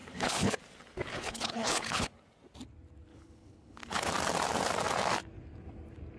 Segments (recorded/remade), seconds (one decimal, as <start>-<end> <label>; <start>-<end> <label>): 0.0-0.6 remade; 0.6-1.1 recorded; 1.1-2.1 remade; 2.1-3.1 recorded; 3.1-4.1 remade; 4.1-6.2 recorded